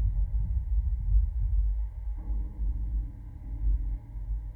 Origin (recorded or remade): recorded